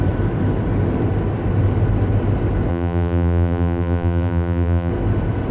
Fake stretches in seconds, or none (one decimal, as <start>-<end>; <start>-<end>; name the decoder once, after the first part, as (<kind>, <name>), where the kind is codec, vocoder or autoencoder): 2.7-4.9 (vocoder, BigVGAN v2)

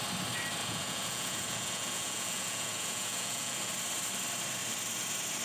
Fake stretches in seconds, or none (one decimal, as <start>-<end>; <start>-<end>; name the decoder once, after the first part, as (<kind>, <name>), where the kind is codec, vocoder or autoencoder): 0.6-3.7 (vocoder, Vocos)

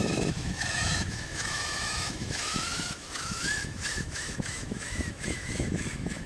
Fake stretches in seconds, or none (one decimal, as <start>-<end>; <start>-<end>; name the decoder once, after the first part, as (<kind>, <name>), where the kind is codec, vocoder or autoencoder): 0.0-6.3 (autoencoder, DAC-VAE)

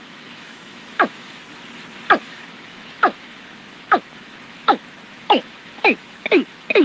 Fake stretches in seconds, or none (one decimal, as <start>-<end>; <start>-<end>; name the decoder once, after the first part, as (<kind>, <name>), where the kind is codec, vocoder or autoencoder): 0.0-1.4 (autoencoder, DAC-VAE); 2.2-6.8

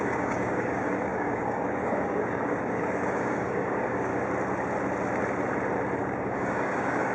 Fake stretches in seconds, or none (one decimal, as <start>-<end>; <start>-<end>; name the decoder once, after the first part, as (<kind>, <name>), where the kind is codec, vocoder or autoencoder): 0.0-4.1 (codec, DAC); 6.0-7.1

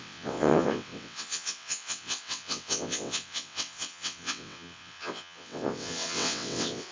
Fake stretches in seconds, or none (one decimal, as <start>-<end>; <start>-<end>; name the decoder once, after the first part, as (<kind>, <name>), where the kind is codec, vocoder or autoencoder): 0.0-6.9 (vocoder, WaveNeXt)

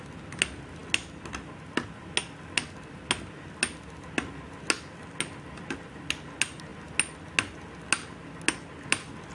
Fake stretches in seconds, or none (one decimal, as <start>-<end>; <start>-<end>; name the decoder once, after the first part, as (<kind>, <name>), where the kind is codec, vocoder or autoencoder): none